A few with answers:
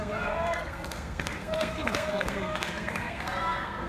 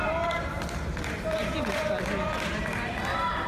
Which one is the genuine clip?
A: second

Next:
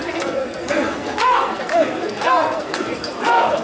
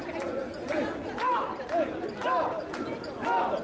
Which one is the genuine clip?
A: second